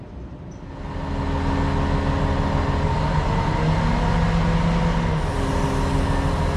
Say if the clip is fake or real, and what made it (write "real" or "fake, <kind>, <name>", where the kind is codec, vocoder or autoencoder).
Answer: real